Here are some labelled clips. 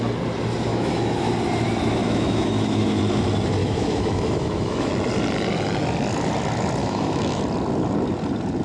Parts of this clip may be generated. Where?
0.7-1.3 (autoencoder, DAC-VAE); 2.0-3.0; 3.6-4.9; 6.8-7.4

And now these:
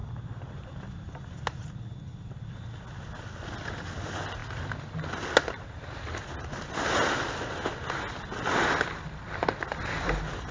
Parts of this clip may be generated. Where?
none